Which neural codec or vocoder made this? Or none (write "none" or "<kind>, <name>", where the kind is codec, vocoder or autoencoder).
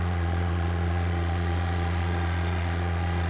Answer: vocoder, Vocos